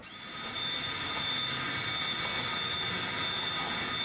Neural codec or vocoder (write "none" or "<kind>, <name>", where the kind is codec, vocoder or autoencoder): none